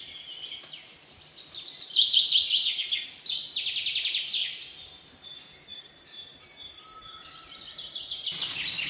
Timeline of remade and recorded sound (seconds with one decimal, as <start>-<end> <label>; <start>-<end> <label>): 0.0-8.9 recorded